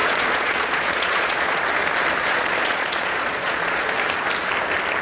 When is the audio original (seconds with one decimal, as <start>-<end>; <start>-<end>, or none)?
1.6-2.2; 3.9-5.0